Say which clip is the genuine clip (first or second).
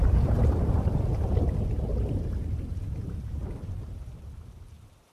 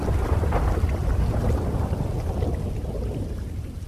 second